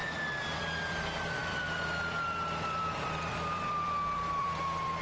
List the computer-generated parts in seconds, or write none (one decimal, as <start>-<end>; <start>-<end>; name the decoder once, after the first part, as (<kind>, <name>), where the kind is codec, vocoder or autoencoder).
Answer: 0.6-5.0 (vocoder, BigVGAN v2)